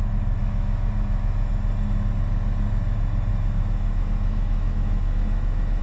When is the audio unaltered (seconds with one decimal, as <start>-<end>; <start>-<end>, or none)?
0.0-0.4; 1.5-3.3